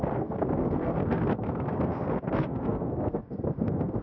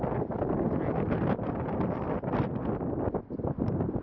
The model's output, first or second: first